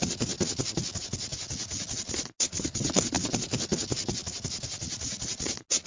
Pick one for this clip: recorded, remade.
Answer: recorded